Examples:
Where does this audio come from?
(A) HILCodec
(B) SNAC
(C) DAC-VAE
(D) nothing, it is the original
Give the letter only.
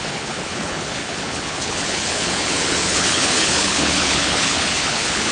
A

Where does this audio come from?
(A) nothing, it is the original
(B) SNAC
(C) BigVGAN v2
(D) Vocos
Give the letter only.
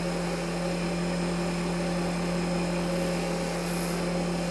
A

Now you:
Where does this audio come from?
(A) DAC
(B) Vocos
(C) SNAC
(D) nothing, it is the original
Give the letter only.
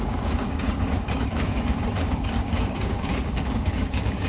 A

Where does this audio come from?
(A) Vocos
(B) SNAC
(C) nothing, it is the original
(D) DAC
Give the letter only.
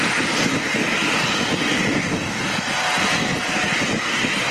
C